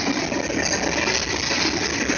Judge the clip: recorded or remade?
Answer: recorded